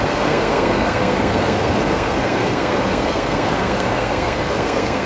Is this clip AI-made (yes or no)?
yes